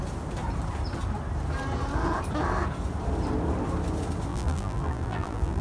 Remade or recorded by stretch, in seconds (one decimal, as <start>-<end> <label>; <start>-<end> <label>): 0.0-4.3 recorded; 4.3-5.6 remade